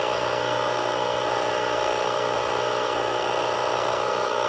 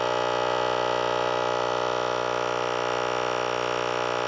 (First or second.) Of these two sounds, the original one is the second